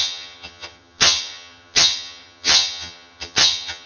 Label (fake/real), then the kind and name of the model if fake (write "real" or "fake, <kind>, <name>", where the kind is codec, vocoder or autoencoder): fake, vocoder, HiFi-GAN